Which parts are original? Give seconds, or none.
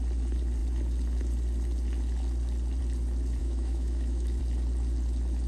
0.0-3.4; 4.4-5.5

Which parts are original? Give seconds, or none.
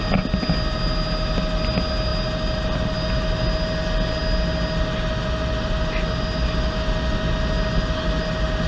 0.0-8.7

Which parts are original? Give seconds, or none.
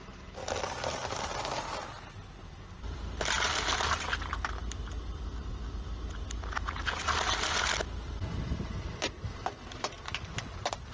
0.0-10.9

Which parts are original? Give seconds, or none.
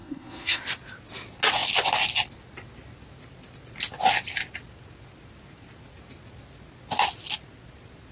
0.6-8.1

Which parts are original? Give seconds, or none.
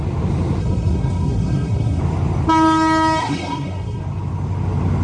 0.0-0.6; 2.0-3.2; 4.0-5.0